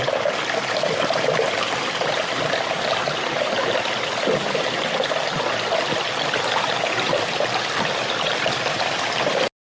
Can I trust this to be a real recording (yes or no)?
yes